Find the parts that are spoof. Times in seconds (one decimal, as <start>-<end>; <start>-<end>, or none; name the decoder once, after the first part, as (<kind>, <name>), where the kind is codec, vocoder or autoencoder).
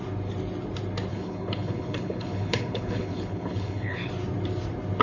1.1-4.1 (codec, HILCodec)